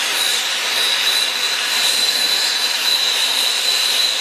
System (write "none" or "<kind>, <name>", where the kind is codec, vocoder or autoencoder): vocoder, BigVGAN v2